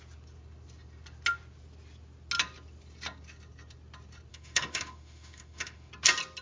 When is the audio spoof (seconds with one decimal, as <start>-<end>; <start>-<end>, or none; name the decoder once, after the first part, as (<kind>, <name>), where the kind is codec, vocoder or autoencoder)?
4.3-5.9 (autoencoder, DAC-VAE)